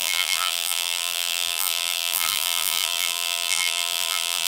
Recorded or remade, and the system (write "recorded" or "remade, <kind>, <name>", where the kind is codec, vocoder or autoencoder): remade, vocoder, BigVGAN v2